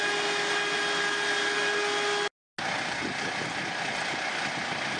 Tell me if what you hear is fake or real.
real